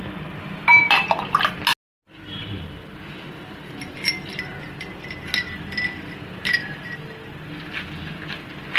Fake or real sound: real